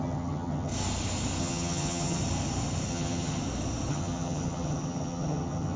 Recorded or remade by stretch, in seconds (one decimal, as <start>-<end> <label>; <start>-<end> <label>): 0.0-0.7 remade; 0.7-1.4 recorded; 1.4-2.2 remade; 2.2-2.9 recorded; 2.9-3.4 remade; 3.4-3.9 recorded; 3.9-5.8 remade